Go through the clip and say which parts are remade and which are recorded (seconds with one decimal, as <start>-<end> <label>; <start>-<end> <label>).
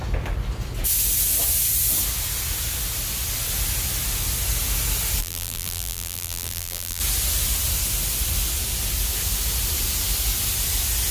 0.0-5.2 recorded; 5.2-7.0 remade; 7.0-11.1 recorded